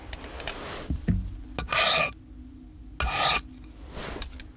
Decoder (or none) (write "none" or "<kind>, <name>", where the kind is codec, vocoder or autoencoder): none